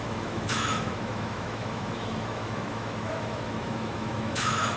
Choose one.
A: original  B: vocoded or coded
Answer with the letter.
B